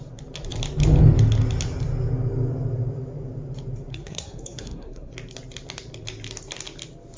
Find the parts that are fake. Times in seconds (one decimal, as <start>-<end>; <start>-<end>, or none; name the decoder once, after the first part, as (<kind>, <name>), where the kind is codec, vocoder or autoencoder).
3.9-5.1 (codec, SNAC)